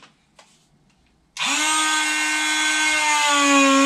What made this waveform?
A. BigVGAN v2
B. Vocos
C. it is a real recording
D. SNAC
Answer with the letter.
C